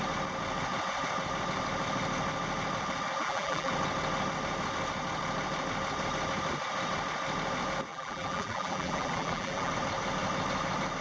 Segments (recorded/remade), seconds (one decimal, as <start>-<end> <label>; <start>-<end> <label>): 0.0-3.2 recorded; 3.2-3.7 remade; 3.7-7.9 recorded; 7.9-9.7 remade; 9.7-11.0 recorded